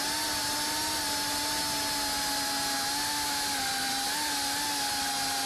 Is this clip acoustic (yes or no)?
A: yes